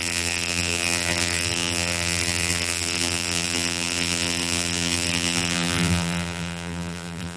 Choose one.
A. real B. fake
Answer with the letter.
B